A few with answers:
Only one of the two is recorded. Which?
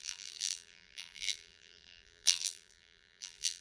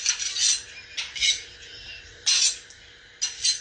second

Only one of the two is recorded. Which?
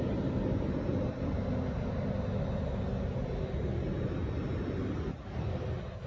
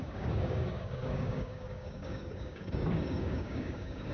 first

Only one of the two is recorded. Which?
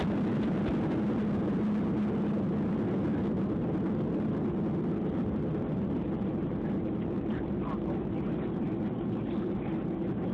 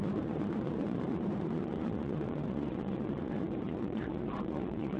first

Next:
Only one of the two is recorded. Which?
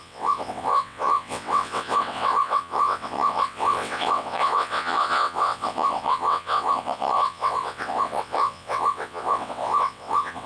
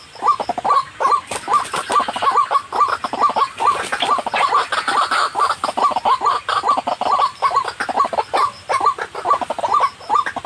second